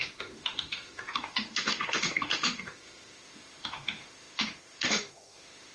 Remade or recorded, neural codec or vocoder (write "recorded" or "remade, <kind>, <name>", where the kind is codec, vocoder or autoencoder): remade, autoencoder, DAC-VAE